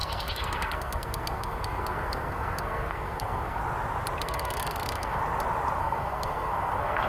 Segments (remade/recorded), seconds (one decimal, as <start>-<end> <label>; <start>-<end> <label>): 0.0-3.6 remade; 3.6-4.2 recorded; 4.2-5.2 remade; 5.2-5.8 recorded; 5.8-7.1 remade